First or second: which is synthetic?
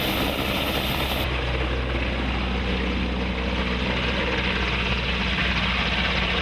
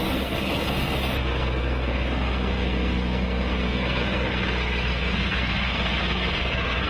second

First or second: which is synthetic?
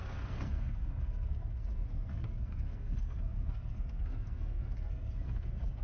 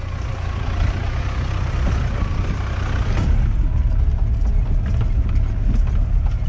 first